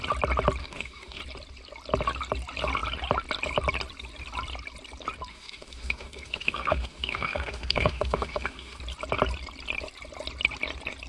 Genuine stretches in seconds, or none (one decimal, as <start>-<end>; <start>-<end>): 0.0-0.6; 1.2-5.3; 8.8-11.1